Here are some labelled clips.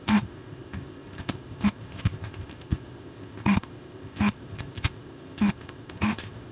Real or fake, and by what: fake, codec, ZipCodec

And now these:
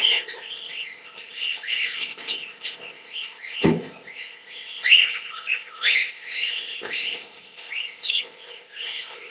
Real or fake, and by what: fake, codec, ZipCodec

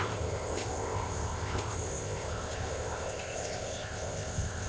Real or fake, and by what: fake, codec, ZipCodec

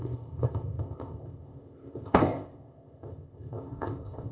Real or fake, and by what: fake, codec, ZipCodec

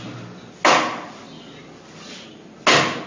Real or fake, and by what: real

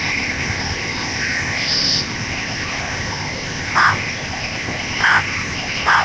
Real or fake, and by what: fake, codec, ZipCodec